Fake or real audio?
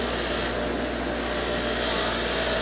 real